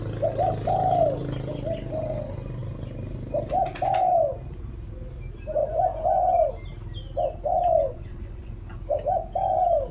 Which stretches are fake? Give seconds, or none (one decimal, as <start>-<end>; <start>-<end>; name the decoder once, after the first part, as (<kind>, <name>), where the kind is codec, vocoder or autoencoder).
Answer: 5.6-6.5 (vocoder, Vocos); 7.5-8.5